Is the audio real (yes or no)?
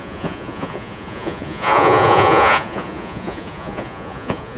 no